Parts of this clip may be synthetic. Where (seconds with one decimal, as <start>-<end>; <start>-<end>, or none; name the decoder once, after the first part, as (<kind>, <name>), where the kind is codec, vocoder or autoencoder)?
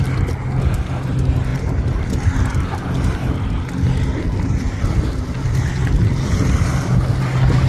1.5-2.1 (vocoder, BigVGAN v2)